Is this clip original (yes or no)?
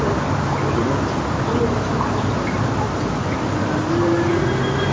yes